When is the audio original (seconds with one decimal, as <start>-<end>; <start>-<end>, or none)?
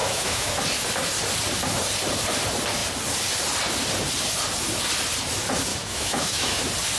0.6-5.7; 6.6-7.0